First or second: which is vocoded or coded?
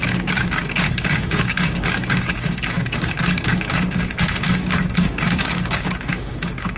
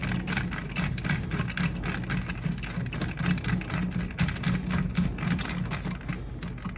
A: first